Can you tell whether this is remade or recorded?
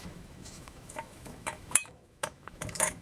remade